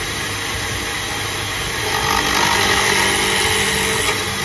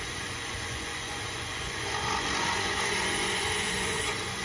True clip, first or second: first